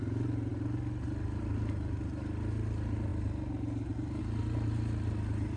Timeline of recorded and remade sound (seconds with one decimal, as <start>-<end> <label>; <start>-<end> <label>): 0.0-5.6 recorded